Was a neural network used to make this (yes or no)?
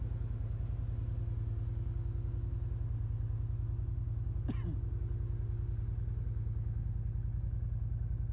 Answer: no